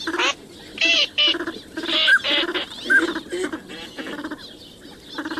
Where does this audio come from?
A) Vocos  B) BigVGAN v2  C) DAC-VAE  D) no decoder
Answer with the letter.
D